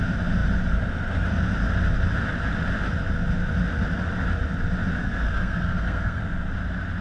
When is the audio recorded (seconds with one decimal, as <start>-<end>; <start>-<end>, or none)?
0.0-5.0; 6.2-7.0